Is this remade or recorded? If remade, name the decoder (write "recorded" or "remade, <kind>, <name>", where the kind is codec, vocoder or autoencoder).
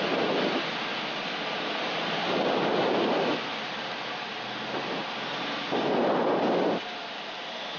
recorded